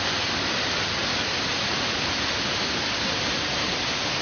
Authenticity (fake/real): real